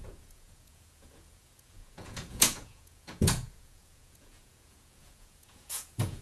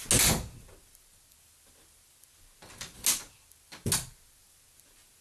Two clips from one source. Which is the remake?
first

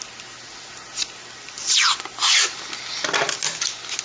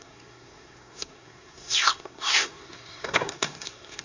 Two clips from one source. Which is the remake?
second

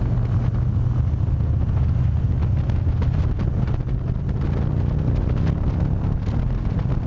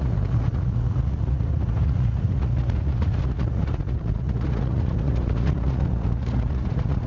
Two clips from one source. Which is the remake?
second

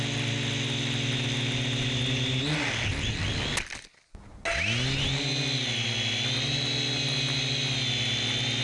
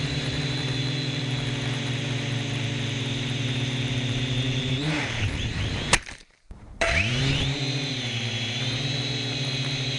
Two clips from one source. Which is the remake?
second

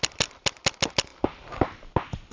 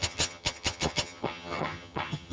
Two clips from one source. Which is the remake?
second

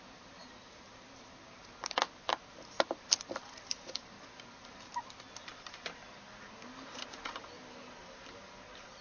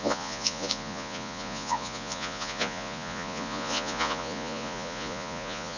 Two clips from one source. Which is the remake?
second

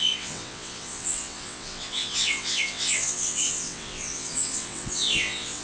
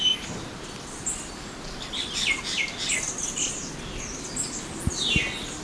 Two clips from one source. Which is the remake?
first